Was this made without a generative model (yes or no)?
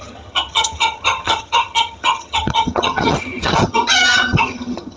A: no